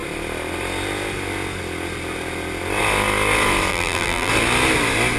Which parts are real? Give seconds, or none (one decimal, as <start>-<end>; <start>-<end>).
0.0-3.7; 4.3-5.2